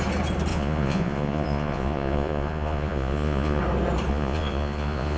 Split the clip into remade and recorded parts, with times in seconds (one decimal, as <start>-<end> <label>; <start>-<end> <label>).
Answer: 0.0-0.5 recorded; 0.5-3.6 remade; 3.6-4.1 recorded; 4.1-5.2 remade